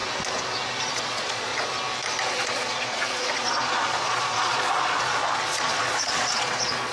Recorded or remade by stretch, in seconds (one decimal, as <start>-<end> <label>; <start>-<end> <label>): 0.0-0.8 recorded; 0.8-1.5 remade; 1.5-2.3 recorded; 2.3-6.9 remade